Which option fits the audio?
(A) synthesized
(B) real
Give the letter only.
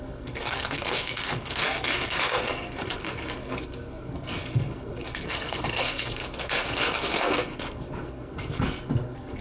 A